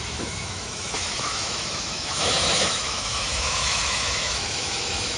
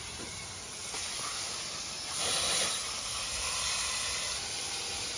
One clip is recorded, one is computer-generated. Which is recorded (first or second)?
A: second